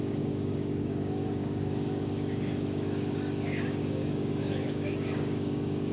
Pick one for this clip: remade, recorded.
remade